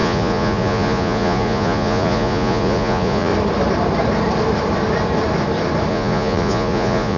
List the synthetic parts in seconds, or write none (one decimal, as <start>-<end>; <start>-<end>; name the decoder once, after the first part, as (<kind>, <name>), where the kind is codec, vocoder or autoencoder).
0.0-3.3 (vocoder, Vocos); 5.9-7.2

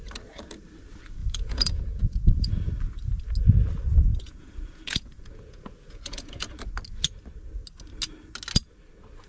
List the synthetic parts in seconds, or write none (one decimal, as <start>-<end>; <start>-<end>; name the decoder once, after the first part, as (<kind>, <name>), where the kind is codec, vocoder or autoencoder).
1.2-2.5 (vocoder, Vocos); 4.1-6.6

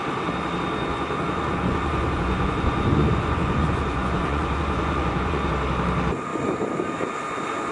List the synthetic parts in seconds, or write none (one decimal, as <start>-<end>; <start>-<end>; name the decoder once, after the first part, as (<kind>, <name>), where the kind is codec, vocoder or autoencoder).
0.9-5.5 (vocoder, Vocos)

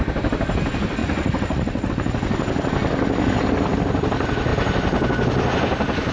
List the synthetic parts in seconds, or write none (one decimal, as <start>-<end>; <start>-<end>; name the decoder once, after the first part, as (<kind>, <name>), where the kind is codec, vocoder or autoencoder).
1.0-1.9 (vocoder, Vocos)